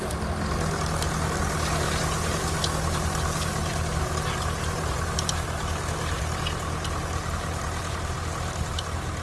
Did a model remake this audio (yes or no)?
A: no